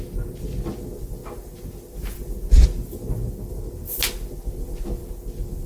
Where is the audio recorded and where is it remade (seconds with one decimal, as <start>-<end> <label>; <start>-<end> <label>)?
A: 0.0-5.7 recorded